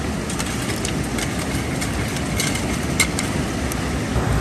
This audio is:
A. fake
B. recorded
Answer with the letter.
B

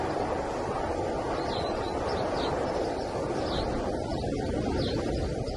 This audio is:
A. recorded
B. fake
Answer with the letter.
A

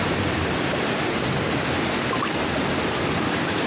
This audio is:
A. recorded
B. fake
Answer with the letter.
A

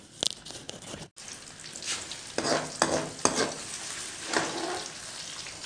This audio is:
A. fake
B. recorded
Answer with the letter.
B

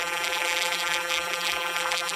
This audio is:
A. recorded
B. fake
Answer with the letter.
B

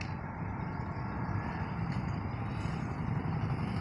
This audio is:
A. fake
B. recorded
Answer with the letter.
B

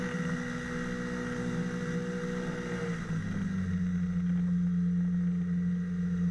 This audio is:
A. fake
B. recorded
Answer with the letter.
B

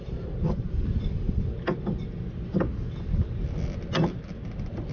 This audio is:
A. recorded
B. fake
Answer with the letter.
A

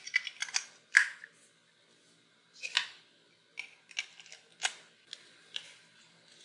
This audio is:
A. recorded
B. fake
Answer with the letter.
A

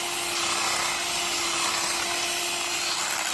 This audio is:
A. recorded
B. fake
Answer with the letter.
A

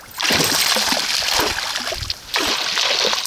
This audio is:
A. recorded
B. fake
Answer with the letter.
A